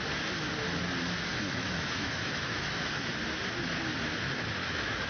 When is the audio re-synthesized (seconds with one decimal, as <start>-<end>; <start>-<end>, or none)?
1.3-3.1; 4.6-5.1